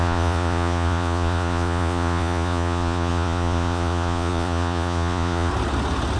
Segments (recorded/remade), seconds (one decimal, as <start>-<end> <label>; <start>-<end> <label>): 0.0-5.5 remade; 5.5-6.2 recorded